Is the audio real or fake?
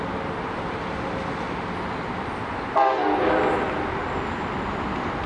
real